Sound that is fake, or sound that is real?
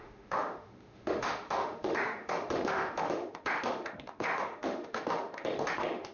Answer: fake